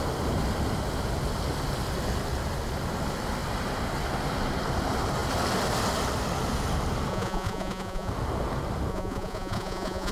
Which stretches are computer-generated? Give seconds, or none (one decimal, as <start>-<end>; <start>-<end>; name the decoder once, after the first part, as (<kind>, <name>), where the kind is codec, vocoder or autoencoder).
7.1-8.1 (vocoder, Vocos); 8.9-10.1